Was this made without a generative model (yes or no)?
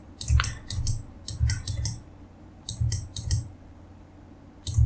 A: yes